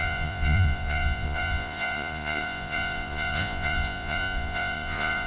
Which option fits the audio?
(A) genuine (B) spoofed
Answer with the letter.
B